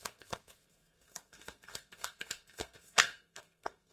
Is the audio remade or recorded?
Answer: remade